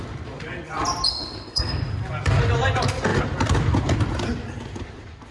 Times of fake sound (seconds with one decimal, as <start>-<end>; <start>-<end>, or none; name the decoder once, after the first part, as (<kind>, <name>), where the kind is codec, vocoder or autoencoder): 1.1-1.8 (codec, SNAC)